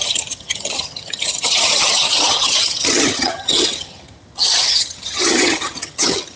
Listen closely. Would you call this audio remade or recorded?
remade